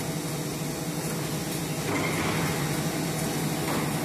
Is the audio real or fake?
real